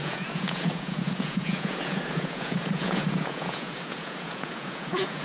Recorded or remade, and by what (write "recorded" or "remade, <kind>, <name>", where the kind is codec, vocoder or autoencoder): remade, vocoder, Vocos